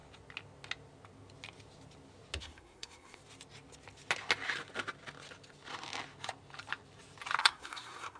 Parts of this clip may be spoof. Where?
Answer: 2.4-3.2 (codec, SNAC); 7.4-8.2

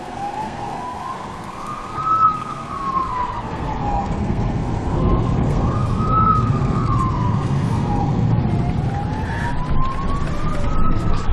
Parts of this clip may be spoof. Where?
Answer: 0.0-8.4 (codec, SNAC); 10.9-11.3

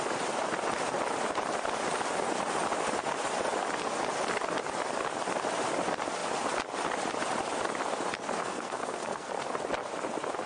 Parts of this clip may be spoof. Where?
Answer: 8.4-9.4 (codec, SNAC)

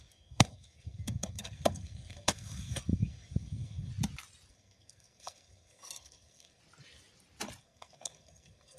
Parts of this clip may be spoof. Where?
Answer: 0.0-3.9 (codec, SNAC); 4.5-6.6; 7.6-8.8

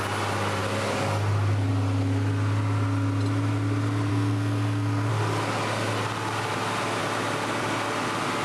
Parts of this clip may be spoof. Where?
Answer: 4.1-5.1 (codec, SNAC)

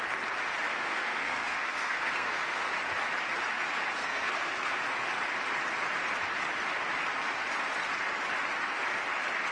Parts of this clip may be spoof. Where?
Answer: 0.7-2.6 (codec, SNAC); 4.0-4.8

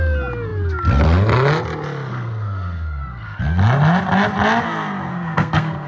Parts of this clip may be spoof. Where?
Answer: 2.1-3.4 (codec, SNAC); 5.1-5.9

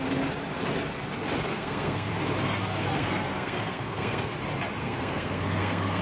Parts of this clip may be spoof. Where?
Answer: 1.5-2.1 (codec, SNAC); 2.8-4.3; 4.8-6.0